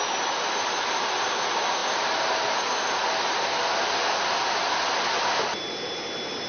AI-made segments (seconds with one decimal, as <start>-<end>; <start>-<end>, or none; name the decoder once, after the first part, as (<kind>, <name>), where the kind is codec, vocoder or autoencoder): none